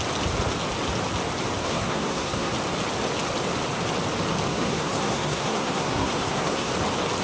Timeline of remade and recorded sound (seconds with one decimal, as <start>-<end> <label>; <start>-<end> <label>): 0.0-1.6 recorded; 1.6-2.5 remade; 2.5-4.5 recorded; 4.5-6.7 remade; 6.7-7.2 recorded